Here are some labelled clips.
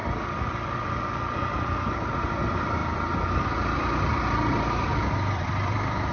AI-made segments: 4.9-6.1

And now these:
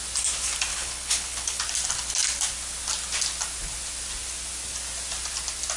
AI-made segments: 0.7-1.6

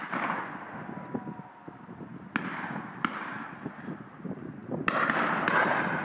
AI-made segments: none